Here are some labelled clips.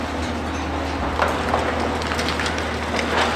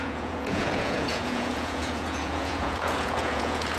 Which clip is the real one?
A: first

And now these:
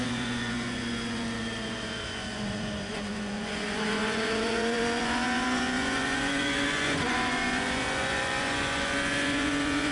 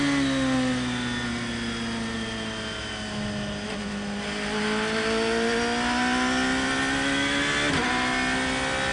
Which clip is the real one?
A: second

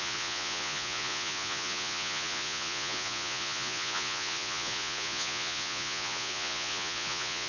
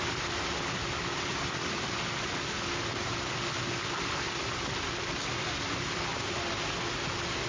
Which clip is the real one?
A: second